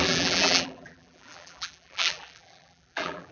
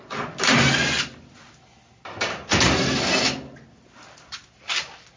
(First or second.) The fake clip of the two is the first